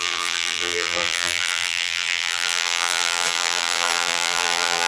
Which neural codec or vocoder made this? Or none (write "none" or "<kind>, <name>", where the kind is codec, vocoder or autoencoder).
vocoder, BigVGAN v2